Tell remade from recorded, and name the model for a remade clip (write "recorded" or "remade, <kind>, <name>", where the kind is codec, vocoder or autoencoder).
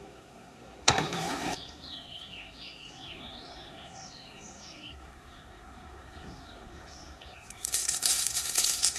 remade, codec, SNAC